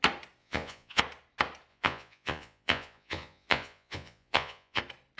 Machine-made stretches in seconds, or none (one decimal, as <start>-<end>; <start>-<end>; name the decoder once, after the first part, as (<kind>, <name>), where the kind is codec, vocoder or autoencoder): 0.4-1.0 (vocoder, Vocos); 1.7-4.8